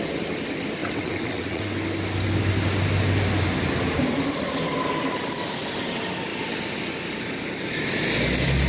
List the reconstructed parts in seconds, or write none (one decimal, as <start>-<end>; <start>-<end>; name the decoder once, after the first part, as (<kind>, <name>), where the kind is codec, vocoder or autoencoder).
0.8-1.7 (vocoder, WaveNeXt)